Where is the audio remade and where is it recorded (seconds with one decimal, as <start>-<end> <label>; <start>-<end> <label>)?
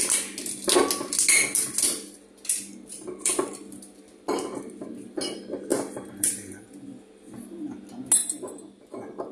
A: 0.0-2.9 recorded; 2.9-3.5 remade; 3.5-5.7 recorded; 5.7-6.3 remade; 6.3-9.3 recorded